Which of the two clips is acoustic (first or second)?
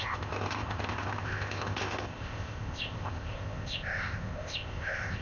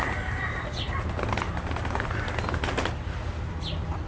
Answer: second